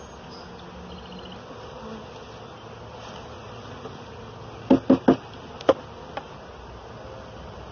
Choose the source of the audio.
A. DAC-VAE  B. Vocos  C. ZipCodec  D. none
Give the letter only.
D